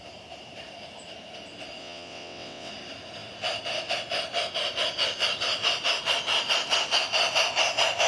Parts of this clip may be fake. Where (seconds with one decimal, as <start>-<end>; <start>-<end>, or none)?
1.8-2.7